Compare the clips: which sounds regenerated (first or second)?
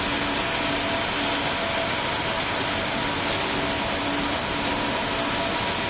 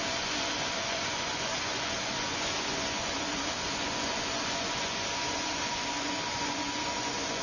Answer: second